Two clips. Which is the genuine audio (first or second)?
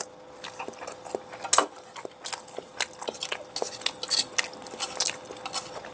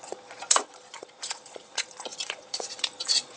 first